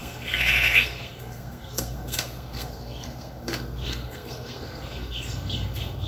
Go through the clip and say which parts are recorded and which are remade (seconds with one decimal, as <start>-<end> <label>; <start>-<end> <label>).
0.0-6.1 remade